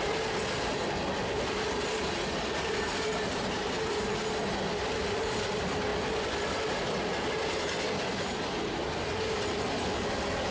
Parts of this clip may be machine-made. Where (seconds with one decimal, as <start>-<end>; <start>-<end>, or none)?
none